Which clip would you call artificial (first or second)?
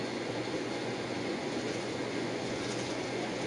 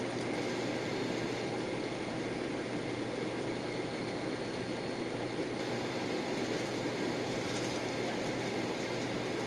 first